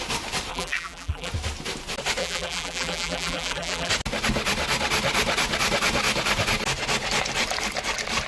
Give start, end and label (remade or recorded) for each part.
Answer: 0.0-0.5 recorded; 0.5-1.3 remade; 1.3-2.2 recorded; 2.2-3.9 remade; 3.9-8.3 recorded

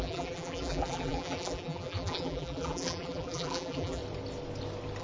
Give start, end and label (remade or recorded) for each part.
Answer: 0.0-4.0 remade; 4.0-5.0 recorded

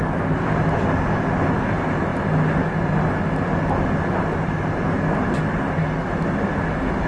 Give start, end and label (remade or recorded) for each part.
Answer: 0.0-7.1 recorded

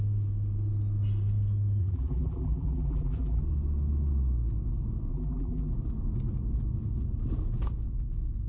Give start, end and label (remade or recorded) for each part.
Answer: 0.0-1.8 recorded; 1.8-3.4 remade; 3.4-5.1 recorded; 5.1-5.7 remade; 5.7-8.5 recorded

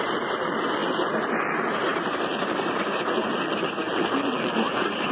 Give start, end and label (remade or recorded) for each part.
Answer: 0.0-0.8 remade; 0.8-1.4 recorded; 1.4-5.1 remade

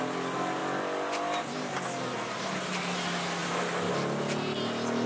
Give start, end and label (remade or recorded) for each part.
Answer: 0.0-5.1 recorded

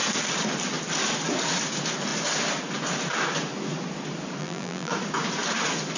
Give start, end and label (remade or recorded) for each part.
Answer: 0.0-4.4 recorded; 4.4-4.9 remade; 4.9-6.0 recorded

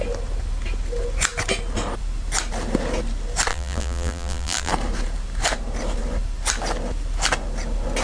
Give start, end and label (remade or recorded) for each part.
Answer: 0.0-3.5 recorded; 3.5-4.7 remade; 4.7-8.0 recorded